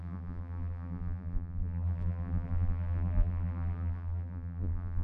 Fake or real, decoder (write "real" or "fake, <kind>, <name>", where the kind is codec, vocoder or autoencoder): fake, vocoder, BigVGAN v2